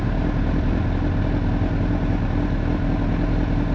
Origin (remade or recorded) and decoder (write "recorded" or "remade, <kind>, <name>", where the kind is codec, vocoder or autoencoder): recorded